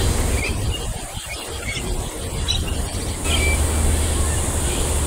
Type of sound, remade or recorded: recorded